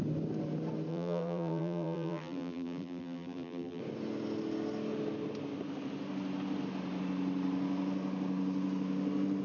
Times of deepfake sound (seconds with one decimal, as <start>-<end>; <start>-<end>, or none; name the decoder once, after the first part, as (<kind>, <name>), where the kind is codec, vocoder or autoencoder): 0.9-3.8 (vocoder, BigVGAN v2)